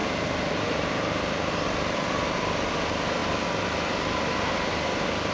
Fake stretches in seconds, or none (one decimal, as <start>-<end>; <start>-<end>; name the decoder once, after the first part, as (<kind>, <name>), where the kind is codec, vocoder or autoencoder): 0.0-1.5 (vocoder, BigVGAN v2)